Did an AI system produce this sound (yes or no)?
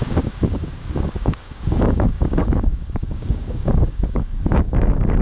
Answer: yes